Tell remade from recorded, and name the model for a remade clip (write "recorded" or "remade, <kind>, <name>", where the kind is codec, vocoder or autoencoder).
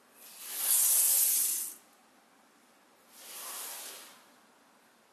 recorded